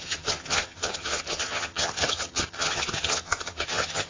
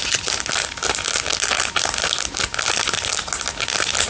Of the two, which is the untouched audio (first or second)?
second